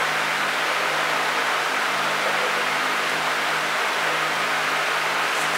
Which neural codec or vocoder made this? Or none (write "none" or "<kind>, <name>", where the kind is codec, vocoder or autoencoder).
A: none